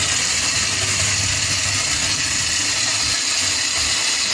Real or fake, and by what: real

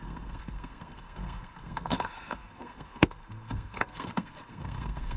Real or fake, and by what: fake, codec, SNAC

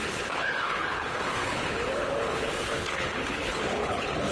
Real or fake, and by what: fake, codec, HILCodec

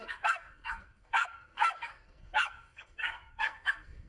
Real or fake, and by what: fake, codec, SNAC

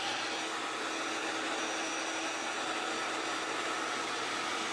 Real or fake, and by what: real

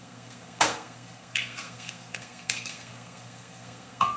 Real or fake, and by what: fake, codec, SNAC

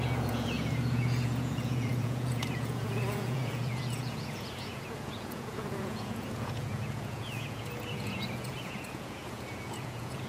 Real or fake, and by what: fake, vocoder, Vocos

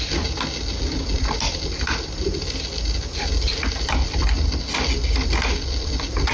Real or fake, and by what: real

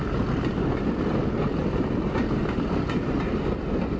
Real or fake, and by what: real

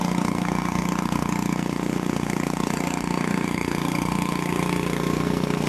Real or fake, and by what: fake, codec, SNAC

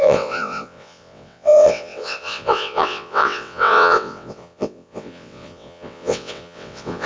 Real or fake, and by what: fake, vocoder, WaveNeXt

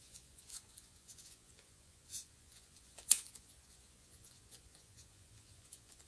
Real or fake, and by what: fake, vocoder, Vocos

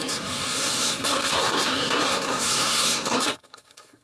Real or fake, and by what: fake, codec, SNAC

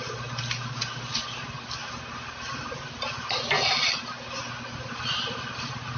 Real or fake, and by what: real